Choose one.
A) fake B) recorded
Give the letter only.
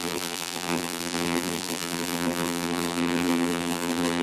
A